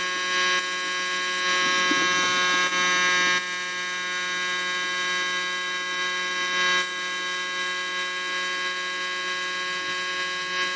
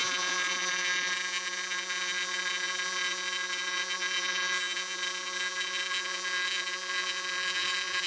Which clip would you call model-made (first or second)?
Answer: second